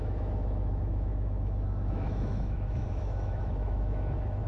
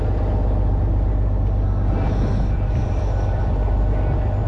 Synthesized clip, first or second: first